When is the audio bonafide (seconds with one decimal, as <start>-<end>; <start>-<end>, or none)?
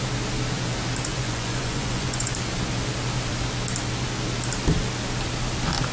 0.0-1.1; 2.3-5.9